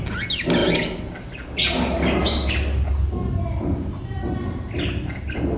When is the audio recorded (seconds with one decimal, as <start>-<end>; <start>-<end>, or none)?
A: 0.0-5.6